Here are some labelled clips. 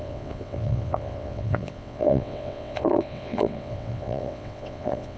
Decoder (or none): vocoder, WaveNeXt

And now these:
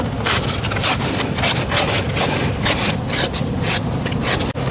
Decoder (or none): none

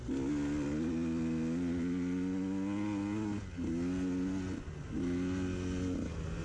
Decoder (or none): none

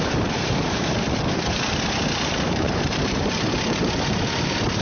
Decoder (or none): vocoder, BigVGAN v2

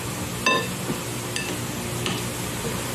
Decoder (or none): none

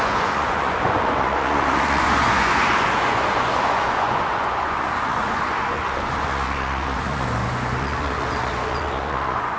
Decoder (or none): vocoder, Vocos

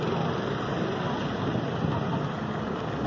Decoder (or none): none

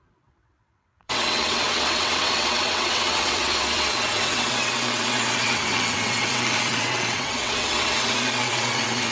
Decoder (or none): vocoder, WaveNeXt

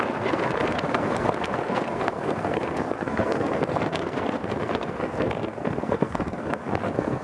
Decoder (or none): codec, SNAC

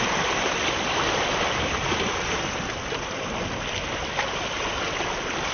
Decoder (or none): none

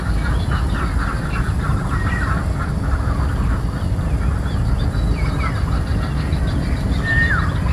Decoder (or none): none